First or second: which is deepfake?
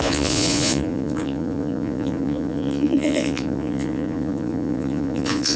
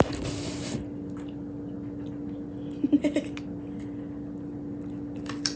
first